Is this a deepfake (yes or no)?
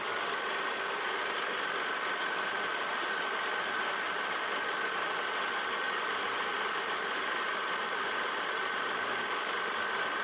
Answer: yes